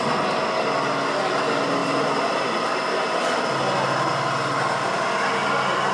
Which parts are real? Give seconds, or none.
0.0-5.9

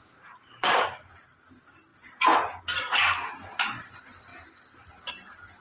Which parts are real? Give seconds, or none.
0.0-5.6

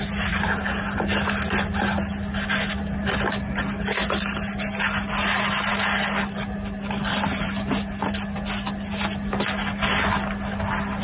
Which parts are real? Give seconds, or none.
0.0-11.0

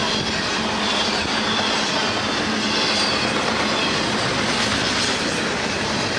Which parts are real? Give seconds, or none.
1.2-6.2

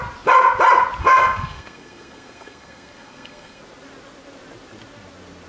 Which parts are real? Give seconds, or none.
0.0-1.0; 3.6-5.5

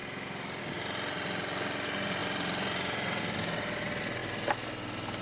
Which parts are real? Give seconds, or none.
0.6-5.2

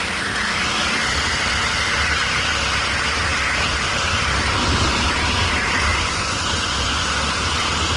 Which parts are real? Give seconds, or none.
0.0-5.9; 7.2-8.0